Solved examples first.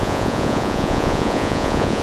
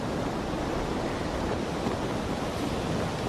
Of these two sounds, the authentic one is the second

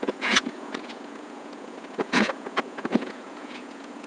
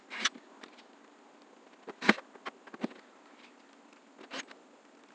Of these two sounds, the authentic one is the second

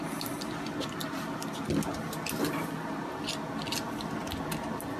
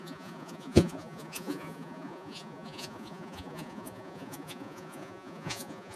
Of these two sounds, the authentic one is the first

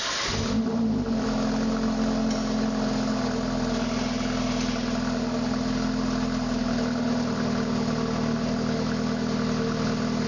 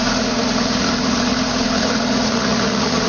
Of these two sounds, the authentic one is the first